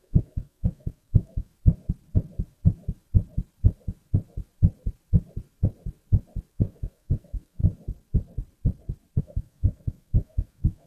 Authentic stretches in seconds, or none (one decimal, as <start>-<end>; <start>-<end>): 1.5-6.5; 7.6-9.2